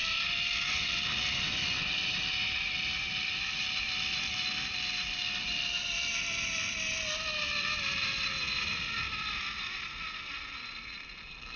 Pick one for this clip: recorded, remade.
recorded